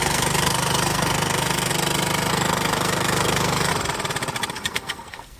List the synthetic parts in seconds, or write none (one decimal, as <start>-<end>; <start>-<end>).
0.0-1.7; 2.3-3.7; 4.5-5.4